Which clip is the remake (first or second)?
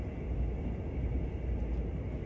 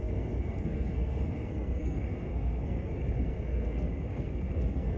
second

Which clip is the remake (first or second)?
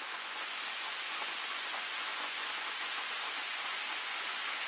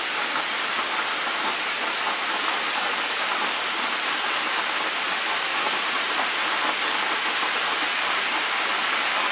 first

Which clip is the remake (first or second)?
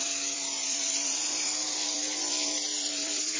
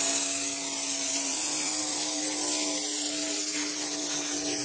first